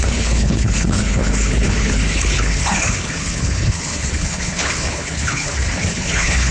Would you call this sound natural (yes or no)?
no